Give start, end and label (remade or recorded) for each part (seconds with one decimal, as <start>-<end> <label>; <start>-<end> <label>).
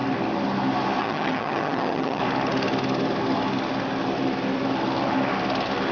0.0-1.0 recorded; 1.0-2.2 remade; 2.2-5.9 recorded